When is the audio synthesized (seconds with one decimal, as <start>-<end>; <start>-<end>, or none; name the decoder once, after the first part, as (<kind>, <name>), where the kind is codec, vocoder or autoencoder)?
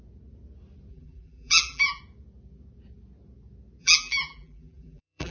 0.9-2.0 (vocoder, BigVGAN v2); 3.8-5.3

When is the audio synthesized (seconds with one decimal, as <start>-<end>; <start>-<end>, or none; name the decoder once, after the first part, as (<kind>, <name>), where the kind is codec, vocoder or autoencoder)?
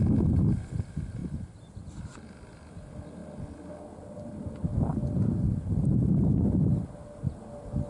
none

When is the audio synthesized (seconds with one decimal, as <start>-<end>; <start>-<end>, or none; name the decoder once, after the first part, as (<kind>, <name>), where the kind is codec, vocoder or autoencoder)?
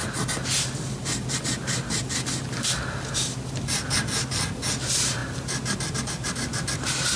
none